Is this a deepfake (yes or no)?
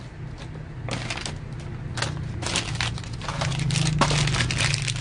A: no